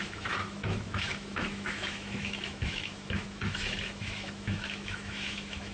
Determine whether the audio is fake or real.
fake